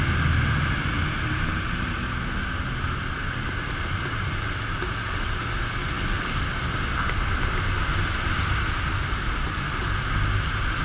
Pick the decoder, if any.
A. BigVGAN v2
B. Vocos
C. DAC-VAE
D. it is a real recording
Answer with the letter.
D